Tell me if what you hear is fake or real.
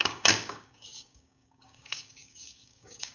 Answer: fake